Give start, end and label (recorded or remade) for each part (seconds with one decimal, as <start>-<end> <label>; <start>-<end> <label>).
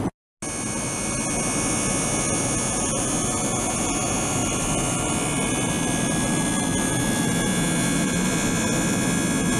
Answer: 0.0-4.4 recorded; 4.4-5.5 remade; 5.5-9.6 recorded